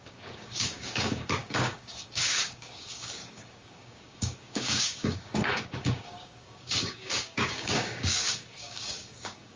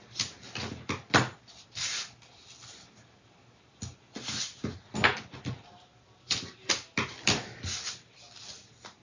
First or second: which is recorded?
second